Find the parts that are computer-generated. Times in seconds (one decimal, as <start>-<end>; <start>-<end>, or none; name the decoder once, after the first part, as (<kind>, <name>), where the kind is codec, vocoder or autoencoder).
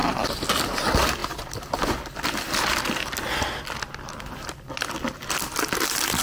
none